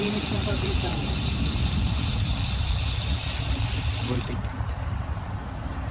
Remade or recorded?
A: remade